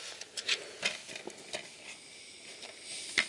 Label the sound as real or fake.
real